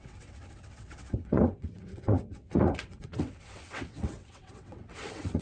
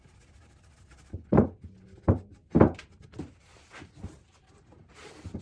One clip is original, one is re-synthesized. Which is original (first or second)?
second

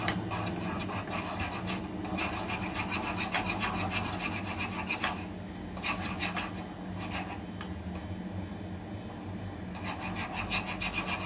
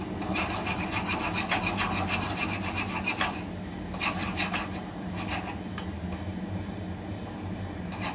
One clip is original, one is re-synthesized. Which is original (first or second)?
first